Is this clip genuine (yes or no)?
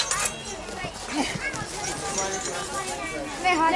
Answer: yes